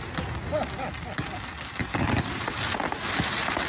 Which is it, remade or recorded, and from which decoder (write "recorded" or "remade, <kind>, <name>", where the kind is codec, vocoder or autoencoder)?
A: recorded